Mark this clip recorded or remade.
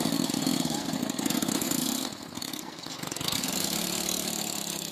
remade